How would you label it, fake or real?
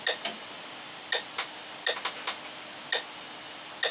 real